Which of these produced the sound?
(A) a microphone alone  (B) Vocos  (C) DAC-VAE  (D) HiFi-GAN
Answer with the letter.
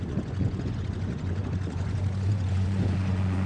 B